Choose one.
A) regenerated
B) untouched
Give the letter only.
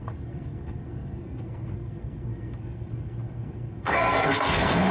A